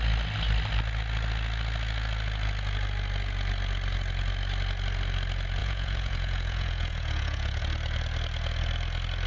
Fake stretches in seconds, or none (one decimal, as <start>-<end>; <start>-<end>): 5.6-7.6